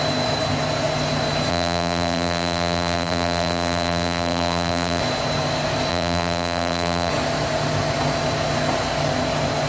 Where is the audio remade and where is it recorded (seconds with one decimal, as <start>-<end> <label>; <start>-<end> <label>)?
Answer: 0.0-1.5 recorded; 1.5-5.0 remade; 5.0-5.9 recorded; 5.9-7.1 remade; 7.1-9.7 recorded